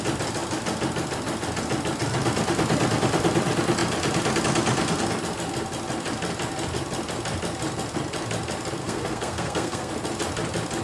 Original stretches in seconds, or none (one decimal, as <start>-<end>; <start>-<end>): 0.0-8.8; 9.9-10.8